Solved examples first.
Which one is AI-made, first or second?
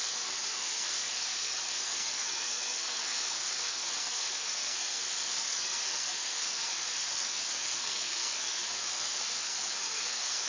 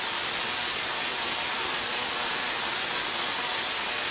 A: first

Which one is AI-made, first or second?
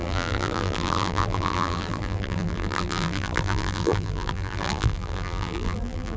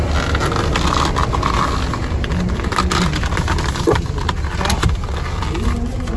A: first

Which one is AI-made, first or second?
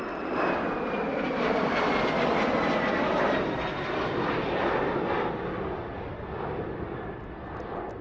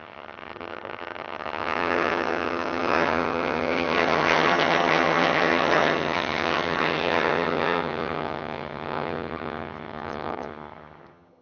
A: second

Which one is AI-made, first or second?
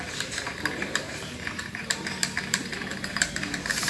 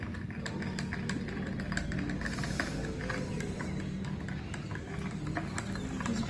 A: first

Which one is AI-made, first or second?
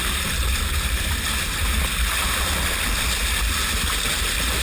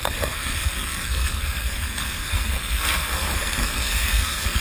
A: second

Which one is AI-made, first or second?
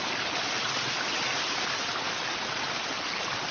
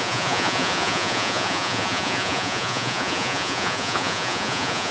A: second